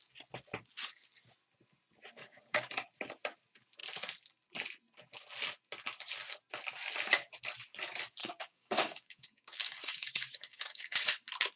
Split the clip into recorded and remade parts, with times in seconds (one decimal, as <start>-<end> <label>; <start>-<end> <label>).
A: 0.0-2.2 recorded; 2.2-2.7 remade; 2.7-8.2 recorded; 8.2-11.0 remade; 11.0-11.6 recorded